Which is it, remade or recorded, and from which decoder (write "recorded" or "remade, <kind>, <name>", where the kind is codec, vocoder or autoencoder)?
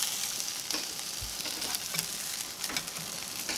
recorded